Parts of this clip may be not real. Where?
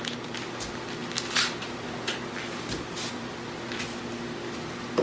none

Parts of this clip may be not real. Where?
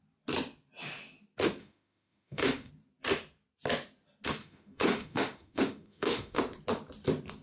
1.6-2.7 (autoencoder, DAC-VAE); 4.4-6.4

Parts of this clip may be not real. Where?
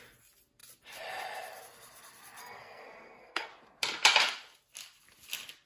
2.4-3.5 (codec, SNAC)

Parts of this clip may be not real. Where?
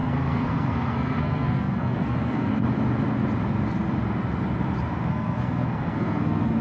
0.0-2.5 (codec, SNAC); 5.1-6.6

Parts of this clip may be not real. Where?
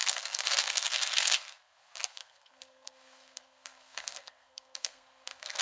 0.0-5.6 (codec, SNAC)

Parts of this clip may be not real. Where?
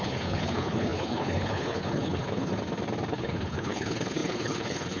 0.0-2.5 (codec, HILCodec); 3.1-5.0